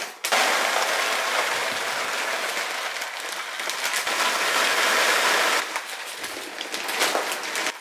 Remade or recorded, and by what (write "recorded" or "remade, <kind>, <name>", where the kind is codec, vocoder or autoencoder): recorded